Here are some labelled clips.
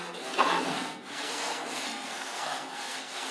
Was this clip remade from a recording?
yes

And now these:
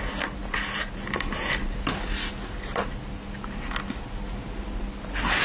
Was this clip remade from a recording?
no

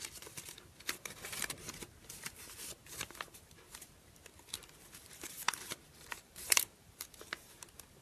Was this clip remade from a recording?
yes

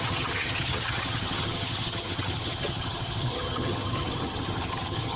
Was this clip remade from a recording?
yes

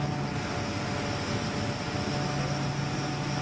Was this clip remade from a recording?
no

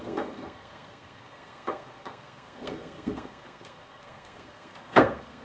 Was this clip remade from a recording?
yes